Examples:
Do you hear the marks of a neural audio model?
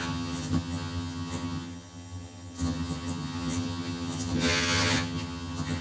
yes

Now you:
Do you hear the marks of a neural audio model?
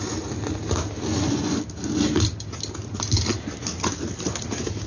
no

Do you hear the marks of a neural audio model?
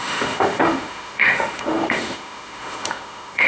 yes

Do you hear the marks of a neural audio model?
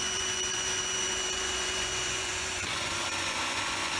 yes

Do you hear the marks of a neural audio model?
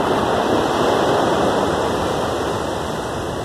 no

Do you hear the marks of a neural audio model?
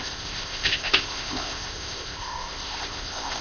yes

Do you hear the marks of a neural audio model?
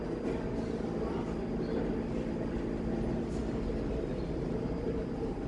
no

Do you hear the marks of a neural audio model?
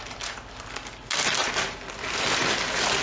no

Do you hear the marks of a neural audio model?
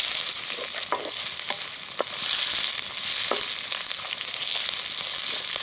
no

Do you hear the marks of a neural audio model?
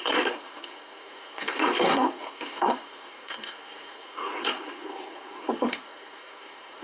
yes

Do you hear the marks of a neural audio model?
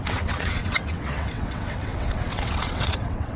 yes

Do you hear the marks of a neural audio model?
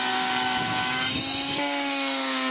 yes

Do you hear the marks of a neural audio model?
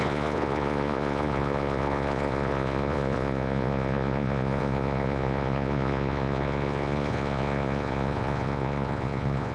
yes